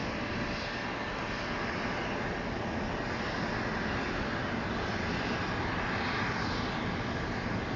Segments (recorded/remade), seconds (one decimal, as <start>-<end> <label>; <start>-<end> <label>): 0.0-7.8 recorded